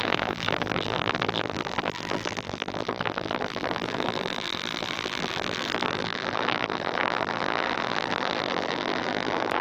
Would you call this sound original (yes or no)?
no